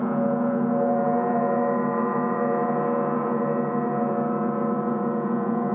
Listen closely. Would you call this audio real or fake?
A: fake